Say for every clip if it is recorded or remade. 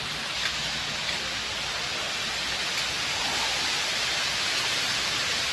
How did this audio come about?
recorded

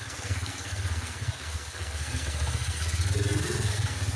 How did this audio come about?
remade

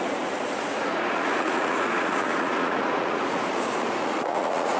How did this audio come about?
remade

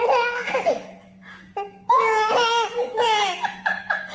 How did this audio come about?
remade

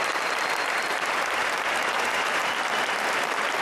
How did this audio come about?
remade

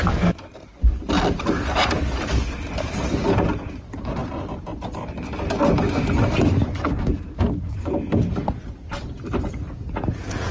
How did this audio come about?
recorded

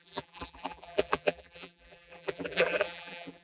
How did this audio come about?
remade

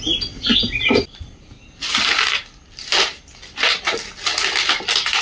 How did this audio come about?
recorded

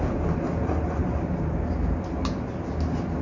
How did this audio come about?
recorded